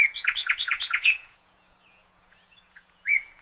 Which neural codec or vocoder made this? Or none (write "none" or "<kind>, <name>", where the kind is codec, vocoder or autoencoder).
vocoder, Vocos